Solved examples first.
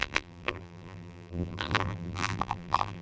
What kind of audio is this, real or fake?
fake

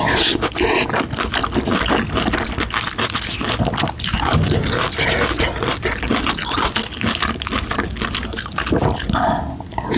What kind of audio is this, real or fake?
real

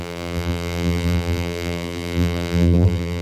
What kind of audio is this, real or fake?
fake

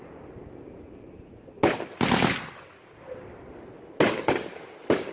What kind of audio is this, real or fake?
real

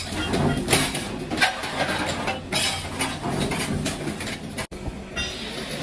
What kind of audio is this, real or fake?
real